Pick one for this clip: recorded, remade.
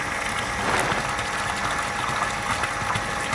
recorded